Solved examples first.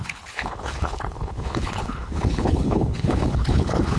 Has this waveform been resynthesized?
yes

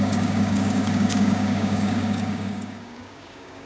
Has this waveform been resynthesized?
yes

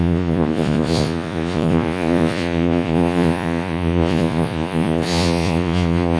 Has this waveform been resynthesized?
yes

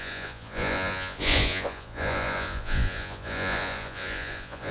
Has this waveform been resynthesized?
yes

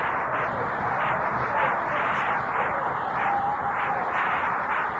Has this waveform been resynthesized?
yes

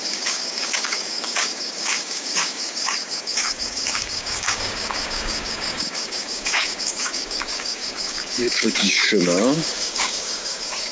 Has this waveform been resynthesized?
yes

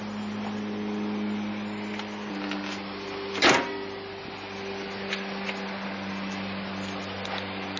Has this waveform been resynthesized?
no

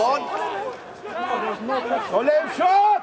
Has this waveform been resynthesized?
no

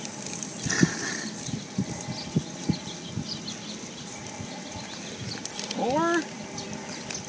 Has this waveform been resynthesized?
no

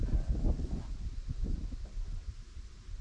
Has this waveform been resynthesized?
no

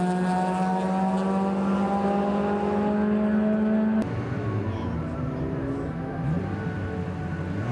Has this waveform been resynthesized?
no